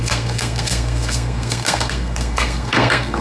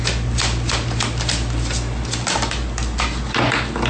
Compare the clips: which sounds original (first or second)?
second